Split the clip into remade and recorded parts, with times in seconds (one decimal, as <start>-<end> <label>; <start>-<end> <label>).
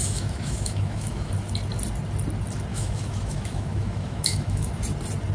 0.0-1.3 remade; 1.3-2.7 recorded; 2.7-4.7 remade; 4.7-5.3 recorded